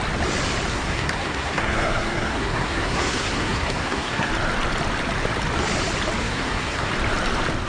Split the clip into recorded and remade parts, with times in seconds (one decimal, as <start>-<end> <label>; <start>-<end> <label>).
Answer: 0.0-0.7 recorded; 0.7-4.3 remade; 4.3-6.2 recorded; 6.2-6.9 remade; 6.9-7.7 recorded